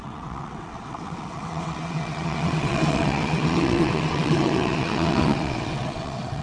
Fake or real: fake